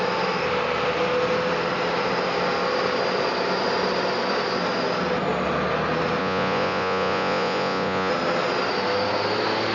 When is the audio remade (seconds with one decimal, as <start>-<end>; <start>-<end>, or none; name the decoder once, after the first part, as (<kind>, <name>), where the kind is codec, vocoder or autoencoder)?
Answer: 6.2-8.1 (vocoder, Vocos)